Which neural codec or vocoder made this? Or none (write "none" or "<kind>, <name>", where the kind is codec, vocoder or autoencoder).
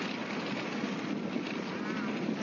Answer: none